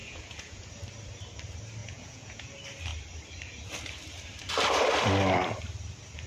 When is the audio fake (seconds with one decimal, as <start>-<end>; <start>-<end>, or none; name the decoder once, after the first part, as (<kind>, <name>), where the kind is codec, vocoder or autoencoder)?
0.0-0.7 (vocoder, Vocos); 1.8-2.5